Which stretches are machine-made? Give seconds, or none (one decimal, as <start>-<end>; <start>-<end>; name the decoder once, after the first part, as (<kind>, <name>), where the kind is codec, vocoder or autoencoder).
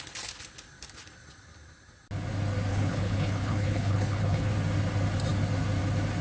2.7-4.5 (codec, HILCodec)